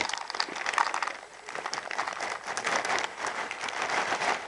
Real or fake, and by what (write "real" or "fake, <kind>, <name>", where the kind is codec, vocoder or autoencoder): fake, vocoder, BigVGAN v2